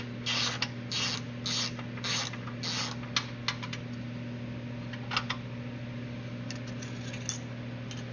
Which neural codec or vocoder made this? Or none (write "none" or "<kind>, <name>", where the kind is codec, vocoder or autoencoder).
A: none